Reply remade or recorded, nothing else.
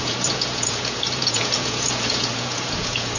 remade